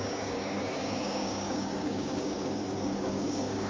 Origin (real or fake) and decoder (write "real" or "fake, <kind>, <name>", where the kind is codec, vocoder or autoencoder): fake, codec, DAC